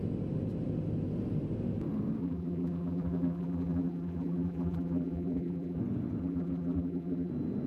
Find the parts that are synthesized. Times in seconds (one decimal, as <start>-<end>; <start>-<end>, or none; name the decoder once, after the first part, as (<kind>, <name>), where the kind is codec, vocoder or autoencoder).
2.2-5.8 (vocoder, BigVGAN v2); 6.2-7.3